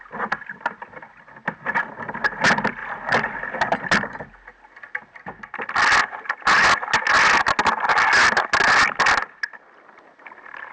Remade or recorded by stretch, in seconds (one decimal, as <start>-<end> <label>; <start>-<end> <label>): 0.0-10.7 recorded